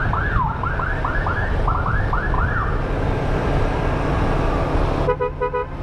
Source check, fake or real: real